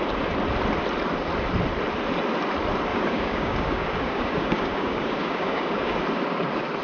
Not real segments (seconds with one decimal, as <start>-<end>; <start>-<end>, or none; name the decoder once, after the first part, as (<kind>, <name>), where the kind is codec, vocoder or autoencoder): 2.9-6.0 (codec, DAC)